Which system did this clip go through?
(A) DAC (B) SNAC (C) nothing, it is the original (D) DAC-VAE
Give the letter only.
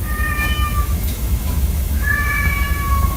D